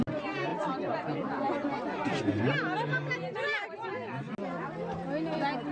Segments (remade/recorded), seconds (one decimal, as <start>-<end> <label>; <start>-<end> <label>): 0.0-5.7 recorded